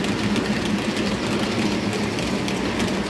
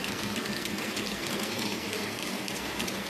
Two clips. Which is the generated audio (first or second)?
second